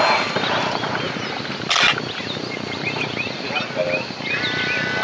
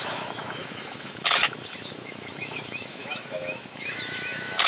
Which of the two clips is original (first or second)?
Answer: first